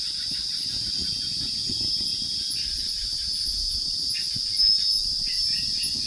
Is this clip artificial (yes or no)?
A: no